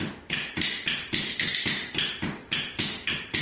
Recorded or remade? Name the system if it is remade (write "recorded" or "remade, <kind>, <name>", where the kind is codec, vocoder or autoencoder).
recorded